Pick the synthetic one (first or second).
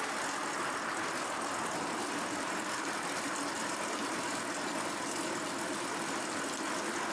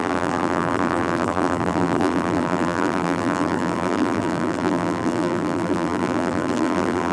second